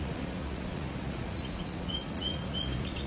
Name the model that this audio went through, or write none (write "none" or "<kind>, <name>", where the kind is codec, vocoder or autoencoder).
vocoder, Vocos